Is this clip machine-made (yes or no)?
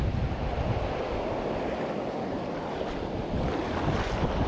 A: no